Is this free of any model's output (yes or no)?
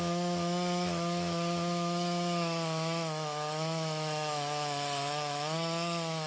no